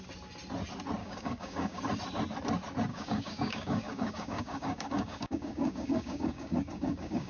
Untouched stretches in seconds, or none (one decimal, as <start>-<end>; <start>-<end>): 0.0-1.0; 1.8-2.9